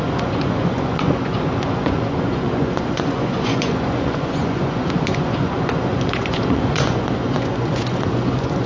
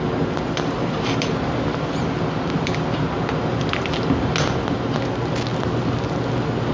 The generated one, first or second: first